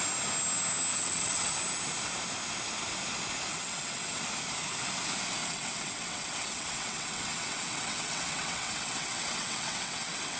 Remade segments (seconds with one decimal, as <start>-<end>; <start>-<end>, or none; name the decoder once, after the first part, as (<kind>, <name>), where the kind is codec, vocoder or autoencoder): 0.9-1.5 (vocoder, WaveNeXt); 3.5-4.2; 5.4-10.4